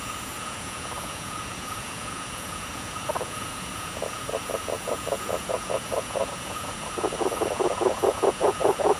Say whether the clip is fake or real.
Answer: fake